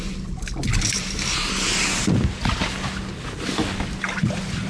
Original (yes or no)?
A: yes